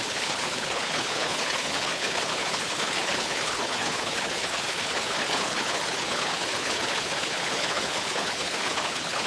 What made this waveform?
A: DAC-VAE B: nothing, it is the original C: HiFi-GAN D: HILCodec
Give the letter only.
D